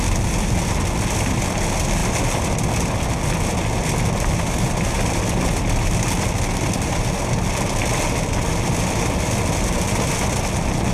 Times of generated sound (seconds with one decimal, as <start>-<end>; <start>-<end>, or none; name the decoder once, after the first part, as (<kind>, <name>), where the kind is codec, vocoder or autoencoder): none